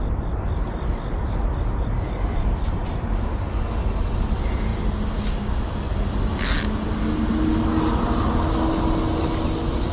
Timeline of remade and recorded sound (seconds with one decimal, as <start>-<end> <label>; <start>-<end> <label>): 0.0-9.9 recorded